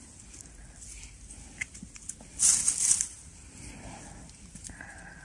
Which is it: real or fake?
real